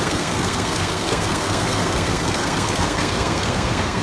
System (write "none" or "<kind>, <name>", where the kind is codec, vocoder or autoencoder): codec, SNAC